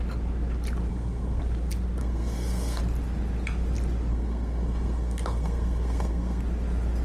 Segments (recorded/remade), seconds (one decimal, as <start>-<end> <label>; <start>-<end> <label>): 0.0-0.9 recorded; 0.9-1.4 remade; 1.4-2.0 recorded; 2.0-2.8 remade; 2.8-4.1 recorded; 4.1-6.4 remade; 6.4-7.0 recorded